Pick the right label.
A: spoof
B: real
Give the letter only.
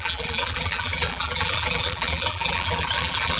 A